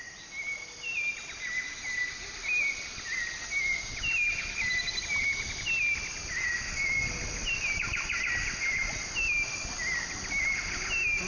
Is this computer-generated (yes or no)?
no